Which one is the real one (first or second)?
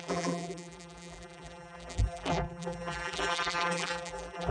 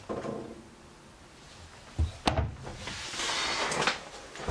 second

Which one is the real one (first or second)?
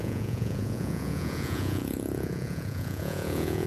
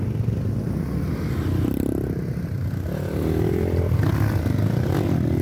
second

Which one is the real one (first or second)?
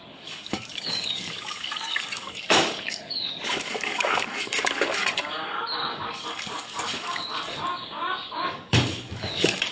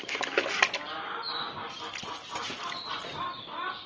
second